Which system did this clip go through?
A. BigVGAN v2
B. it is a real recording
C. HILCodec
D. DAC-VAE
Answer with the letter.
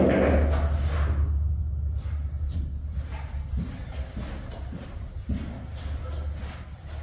B